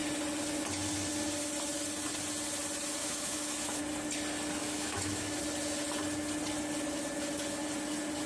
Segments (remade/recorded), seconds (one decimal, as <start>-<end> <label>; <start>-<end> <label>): 0.0-3.0 recorded; 3.0-3.8 remade; 3.8-4.6 recorded; 4.6-5.4 remade; 5.4-8.3 recorded